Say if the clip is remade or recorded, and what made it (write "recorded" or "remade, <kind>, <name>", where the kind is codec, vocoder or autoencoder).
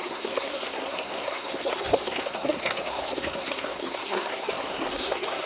remade, codec, SNAC